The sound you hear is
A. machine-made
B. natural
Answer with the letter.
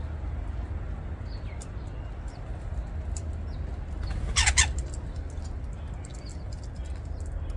B